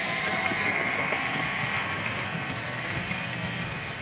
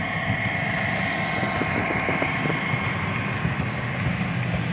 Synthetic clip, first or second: first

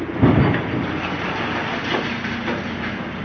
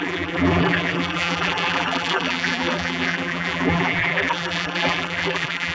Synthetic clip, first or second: second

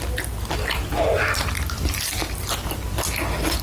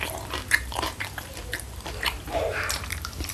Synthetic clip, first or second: second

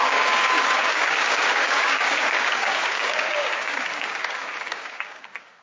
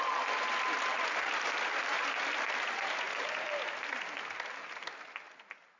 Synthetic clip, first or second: first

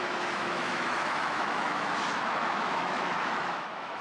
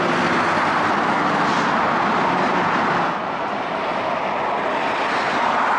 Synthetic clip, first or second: first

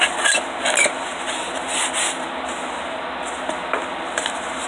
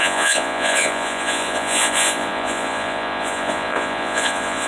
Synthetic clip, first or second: second